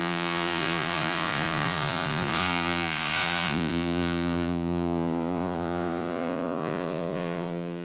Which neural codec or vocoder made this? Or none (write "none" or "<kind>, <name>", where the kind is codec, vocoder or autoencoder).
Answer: vocoder, Vocos